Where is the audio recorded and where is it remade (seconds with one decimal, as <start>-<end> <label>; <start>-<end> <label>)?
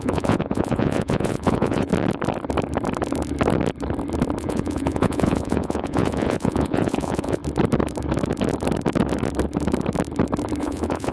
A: 0.0-1.9 remade; 1.9-4.4 recorded; 4.4-7.4 remade; 7.4-10.6 recorded; 10.6-11.1 remade